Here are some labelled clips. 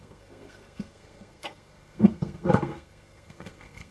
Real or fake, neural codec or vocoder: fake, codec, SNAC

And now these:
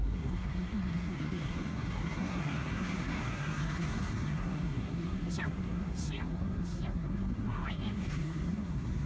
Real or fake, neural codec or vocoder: fake, codec, SNAC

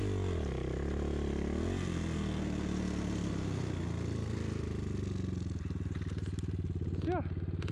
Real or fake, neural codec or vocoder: real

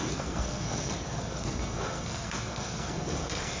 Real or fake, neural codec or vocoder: fake, codec, SNAC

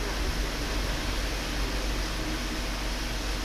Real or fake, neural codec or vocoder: real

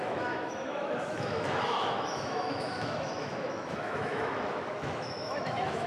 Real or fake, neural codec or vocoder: fake, autoencoder, DAC-VAE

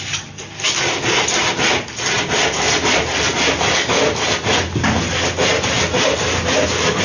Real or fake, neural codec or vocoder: real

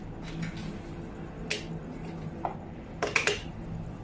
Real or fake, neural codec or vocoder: real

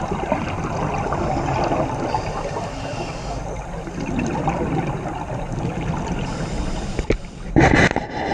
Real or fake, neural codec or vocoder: real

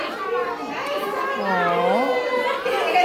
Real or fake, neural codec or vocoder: real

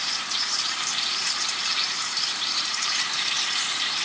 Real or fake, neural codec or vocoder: fake, vocoder, BigVGAN v2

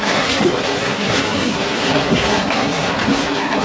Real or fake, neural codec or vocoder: fake, codec, SNAC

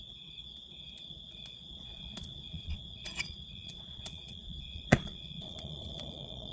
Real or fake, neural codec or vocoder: fake, vocoder, Vocos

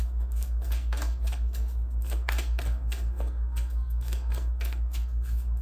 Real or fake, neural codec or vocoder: fake, codec, SNAC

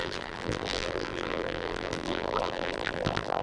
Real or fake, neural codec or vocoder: fake, vocoder, BigVGAN v2